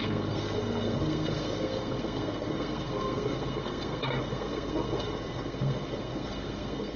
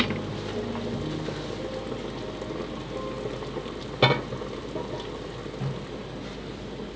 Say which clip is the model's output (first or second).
first